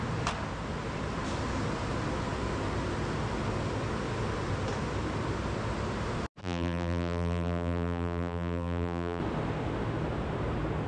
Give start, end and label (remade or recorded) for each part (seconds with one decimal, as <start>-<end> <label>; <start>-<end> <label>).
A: 0.0-6.4 recorded; 6.4-9.2 remade; 9.2-10.9 recorded